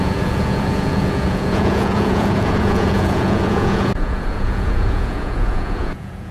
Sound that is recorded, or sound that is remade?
remade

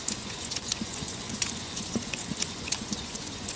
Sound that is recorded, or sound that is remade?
remade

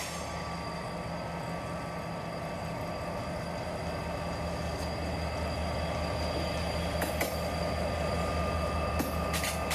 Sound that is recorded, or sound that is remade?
recorded